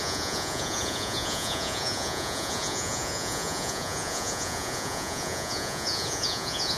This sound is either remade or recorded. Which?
remade